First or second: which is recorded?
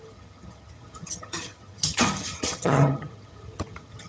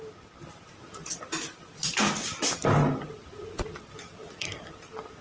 second